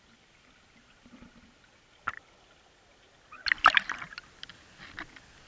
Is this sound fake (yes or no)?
no